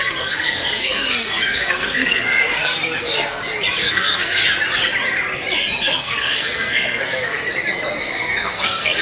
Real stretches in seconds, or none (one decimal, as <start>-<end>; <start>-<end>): 3.4-3.9; 4.4-5.8; 7.4-8.0